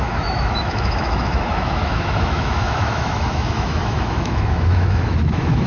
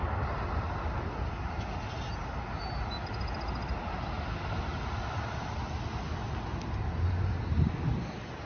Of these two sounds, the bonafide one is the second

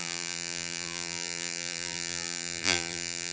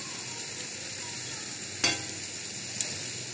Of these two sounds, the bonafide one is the second